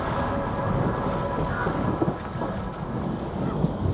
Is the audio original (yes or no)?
no